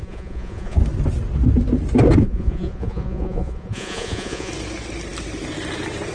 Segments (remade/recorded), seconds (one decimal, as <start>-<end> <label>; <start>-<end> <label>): 0.0-0.8 remade; 0.8-2.2 recorded; 2.2-4.5 remade; 4.5-6.1 recorded